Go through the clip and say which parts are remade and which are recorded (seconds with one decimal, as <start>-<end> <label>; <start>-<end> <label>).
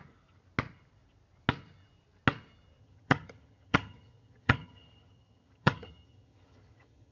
0.0-2.8 recorded; 2.8-7.1 remade